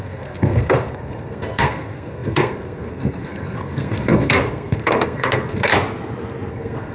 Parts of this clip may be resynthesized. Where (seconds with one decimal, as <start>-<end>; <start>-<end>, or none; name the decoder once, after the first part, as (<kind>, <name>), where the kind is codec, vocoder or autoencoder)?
0.0-5.7 (codec, SNAC); 6.5-6.9